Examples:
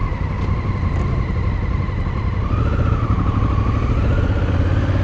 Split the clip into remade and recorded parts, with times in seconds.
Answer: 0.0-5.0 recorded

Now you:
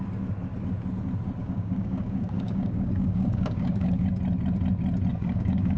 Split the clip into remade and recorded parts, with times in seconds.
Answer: 0.0-1.4 recorded; 1.4-4.2 remade; 4.2-5.1 recorded; 5.1-5.8 remade

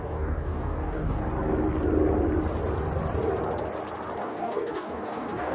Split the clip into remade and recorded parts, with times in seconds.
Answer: 0.0-1.2 remade; 1.2-4.2 recorded; 4.2-5.5 remade

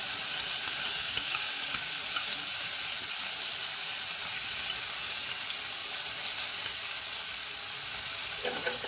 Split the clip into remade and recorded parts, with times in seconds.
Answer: 0.0-1.0 recorded; 1.0-1.9 remade; 1.9-8.9 recorded

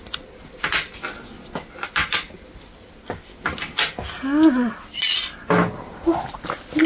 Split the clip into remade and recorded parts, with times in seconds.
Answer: 0.0-6.9 recorded

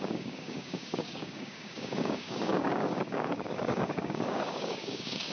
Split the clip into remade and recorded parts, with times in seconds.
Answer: 0.0-5.3 remade

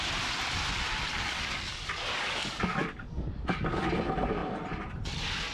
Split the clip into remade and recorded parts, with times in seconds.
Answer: 0.0-1.1 recorded; 1.1-3.8 remade; 3.8-5.5 recorded

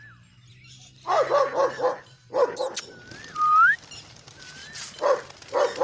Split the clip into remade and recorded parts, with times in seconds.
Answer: 0.0-5.8 recorded